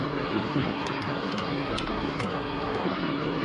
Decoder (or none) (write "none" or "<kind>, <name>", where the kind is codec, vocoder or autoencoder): codec, SNAC